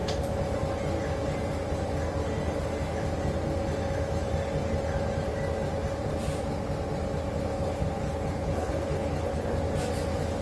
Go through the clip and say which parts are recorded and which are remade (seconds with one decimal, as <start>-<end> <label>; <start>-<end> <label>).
0.0-7.5 recorded; 7.5-9.5 remade; 9.5-10.4 recorded